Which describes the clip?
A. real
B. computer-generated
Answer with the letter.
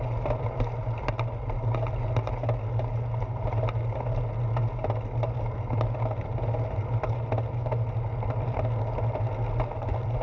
A